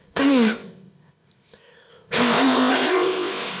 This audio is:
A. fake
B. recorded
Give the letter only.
A